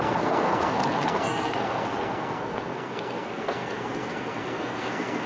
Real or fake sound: fake